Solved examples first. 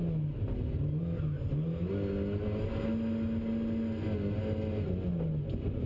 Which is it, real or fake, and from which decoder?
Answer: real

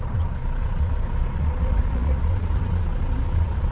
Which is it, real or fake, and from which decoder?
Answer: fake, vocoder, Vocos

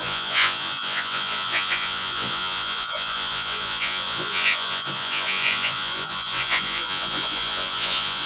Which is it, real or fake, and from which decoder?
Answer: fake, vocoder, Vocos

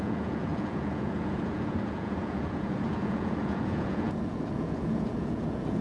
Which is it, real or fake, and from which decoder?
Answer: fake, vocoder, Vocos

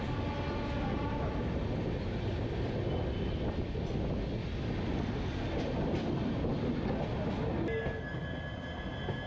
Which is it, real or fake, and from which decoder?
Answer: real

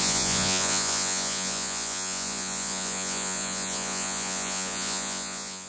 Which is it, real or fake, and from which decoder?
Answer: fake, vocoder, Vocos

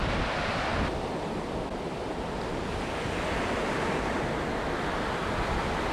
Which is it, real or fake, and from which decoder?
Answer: real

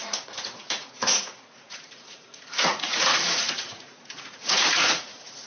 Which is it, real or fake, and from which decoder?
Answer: fake, vocoder, Vocos